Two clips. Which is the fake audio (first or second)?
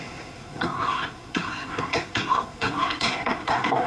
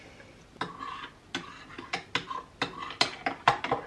first